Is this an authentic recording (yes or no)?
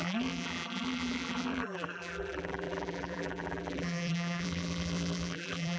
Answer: no